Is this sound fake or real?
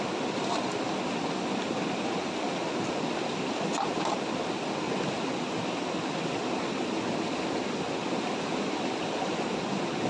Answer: real